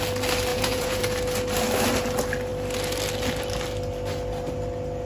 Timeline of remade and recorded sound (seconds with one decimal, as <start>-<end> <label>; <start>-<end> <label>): 0.0-0.5 recorded; 0.5-1.0 remade; 1.0-5.1 recorded